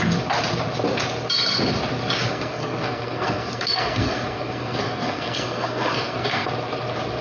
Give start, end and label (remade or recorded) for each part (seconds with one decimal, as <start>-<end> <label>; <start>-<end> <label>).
0.0-2.2 recorded; 2.2-6.5 remade; 6.5-7.2 recorded